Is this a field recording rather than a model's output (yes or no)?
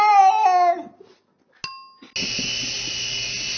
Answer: yes